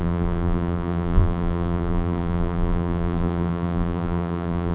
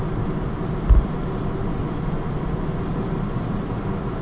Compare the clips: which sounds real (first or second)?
second